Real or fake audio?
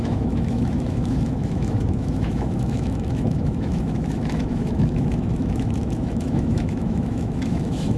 fake